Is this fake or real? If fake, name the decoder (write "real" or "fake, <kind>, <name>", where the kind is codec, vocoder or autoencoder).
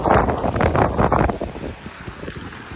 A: real